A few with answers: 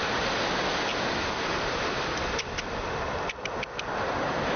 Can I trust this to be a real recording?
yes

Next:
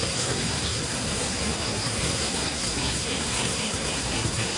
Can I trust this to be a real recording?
no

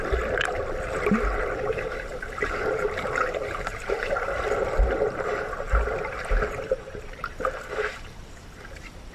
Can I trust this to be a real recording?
no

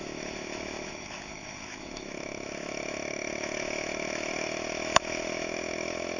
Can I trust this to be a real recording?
no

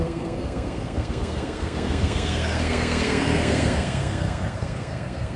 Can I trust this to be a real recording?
no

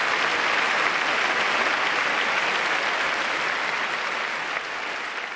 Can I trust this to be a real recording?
yes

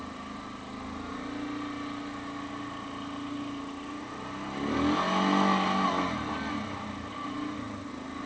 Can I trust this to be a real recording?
yes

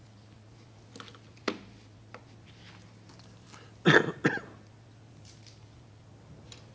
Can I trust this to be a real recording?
yes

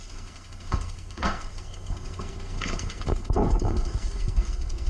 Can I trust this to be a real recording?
no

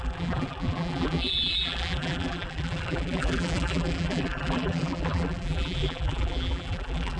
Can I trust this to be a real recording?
no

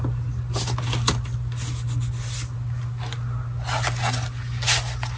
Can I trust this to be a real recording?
yes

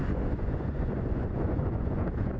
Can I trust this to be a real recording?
no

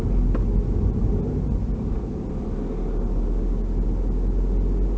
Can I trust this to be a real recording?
yes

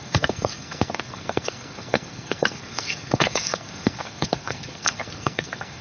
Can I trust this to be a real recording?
no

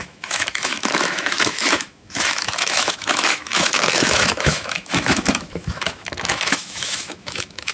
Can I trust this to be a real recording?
no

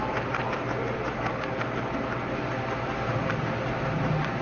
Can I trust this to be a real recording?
yes